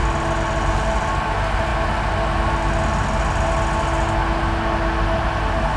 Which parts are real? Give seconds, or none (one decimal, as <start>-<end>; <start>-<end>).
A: 0.0-5.8